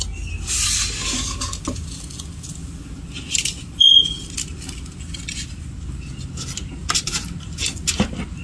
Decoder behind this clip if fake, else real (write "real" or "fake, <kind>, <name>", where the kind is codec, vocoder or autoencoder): real